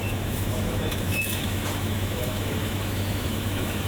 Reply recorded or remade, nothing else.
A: remade